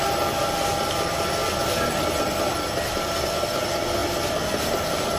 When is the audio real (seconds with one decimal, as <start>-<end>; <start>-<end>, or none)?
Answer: 0.0-5.2